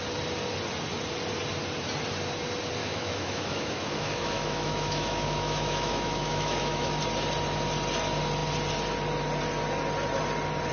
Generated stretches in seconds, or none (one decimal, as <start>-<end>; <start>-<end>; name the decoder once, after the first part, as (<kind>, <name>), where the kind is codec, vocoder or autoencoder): 2.8-7.0 (autoencoder, DAC-VAE)